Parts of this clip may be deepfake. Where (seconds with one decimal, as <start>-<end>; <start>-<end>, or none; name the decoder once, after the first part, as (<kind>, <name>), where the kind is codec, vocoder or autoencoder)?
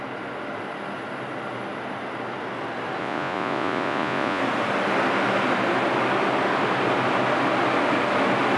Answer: 3.0-4.4 (vocoder, Vocos)